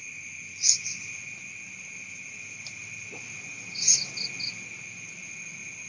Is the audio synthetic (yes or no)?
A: no